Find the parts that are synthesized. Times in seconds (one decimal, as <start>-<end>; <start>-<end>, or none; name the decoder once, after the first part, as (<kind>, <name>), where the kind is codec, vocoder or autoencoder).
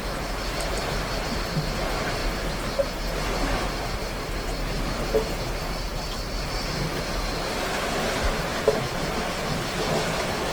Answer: 5.9-6.4 (vocoder, BigVGAN v2); 8.5-9.4